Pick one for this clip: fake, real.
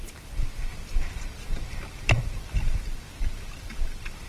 fake